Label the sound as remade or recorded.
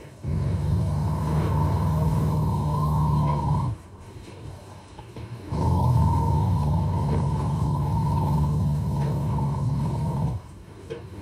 remade